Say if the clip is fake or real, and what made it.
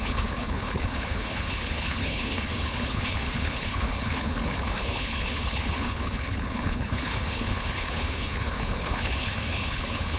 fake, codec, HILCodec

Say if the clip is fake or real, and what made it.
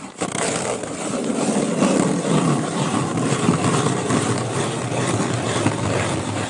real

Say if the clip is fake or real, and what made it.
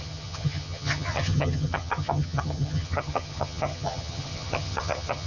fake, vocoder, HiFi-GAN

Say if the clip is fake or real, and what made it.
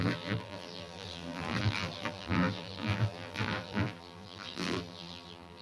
fake, vocoder, BigVGAN v2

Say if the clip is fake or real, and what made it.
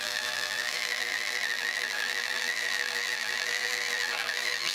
fake, vocoder, BigVGAN v2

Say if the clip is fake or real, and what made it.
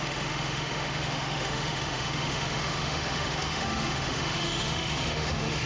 fake, autoencoder, DAC-VAE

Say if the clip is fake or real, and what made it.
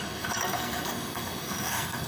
fake, codec, SNAC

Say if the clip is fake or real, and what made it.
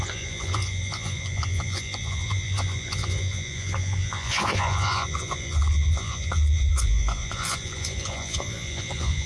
fake, vocoder, Vocos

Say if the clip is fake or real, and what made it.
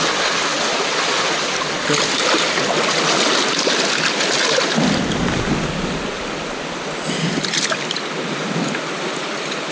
real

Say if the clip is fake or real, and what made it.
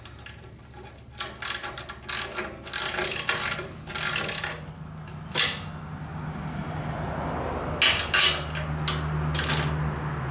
real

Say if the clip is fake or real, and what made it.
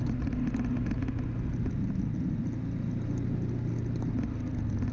real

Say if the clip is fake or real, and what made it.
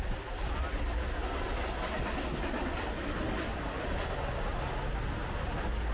real